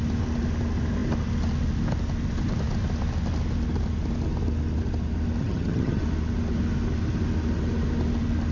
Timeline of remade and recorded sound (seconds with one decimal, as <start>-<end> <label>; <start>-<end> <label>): 0.0-5.4 recorded; 5.4-6.0 remade; 6.0-8.5 recorded